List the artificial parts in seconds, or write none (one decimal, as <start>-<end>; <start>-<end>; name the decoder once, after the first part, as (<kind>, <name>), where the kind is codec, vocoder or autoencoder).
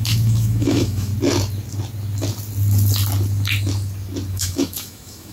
0.0-1.1 (autoencoder, DAC-VAE); 4.3-5.3